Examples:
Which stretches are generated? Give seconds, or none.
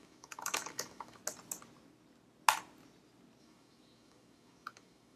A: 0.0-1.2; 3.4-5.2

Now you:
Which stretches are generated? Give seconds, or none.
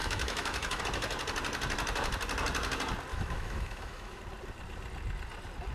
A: 0.0-0.8; 3.1-4.2